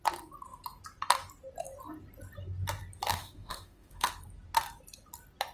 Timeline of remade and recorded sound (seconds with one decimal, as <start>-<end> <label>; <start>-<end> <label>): 0.0-3.1 recorded; 3.1-4.1 remade; 4.1-5.5 recorded